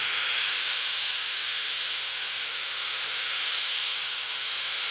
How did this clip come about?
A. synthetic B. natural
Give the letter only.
A